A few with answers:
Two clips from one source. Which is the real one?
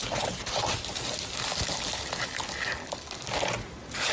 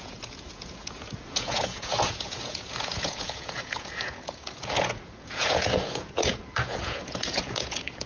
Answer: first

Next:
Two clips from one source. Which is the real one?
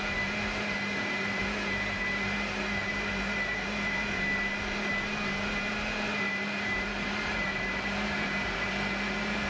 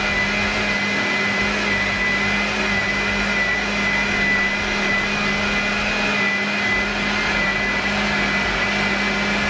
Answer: second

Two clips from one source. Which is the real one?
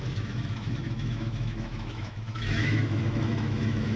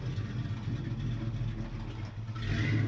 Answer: second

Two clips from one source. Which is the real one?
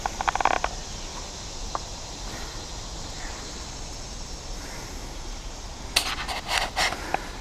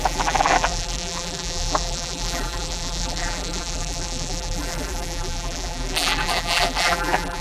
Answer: first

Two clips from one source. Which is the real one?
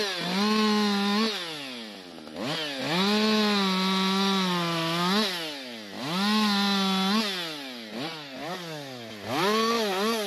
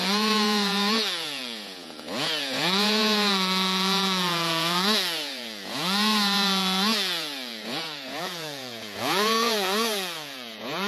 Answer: first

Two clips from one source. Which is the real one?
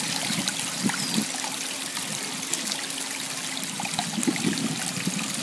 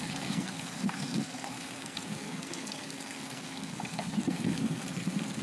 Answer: first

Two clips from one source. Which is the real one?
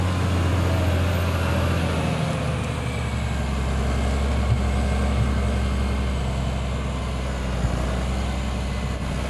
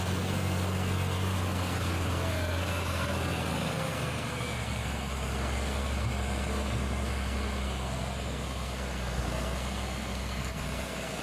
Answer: first